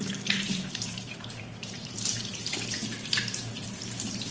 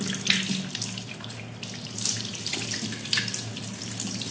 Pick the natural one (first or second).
second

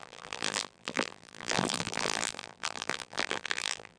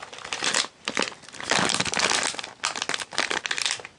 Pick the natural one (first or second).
second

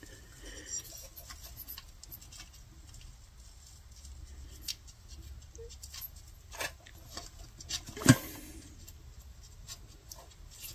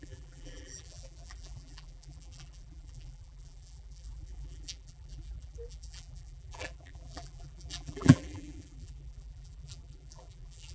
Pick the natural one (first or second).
first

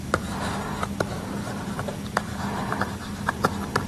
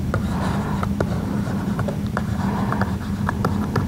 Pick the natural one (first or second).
first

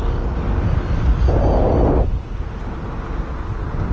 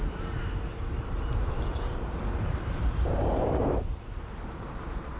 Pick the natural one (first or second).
first